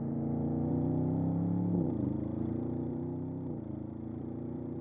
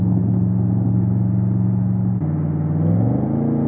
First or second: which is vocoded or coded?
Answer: first